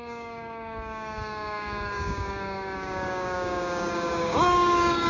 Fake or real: fake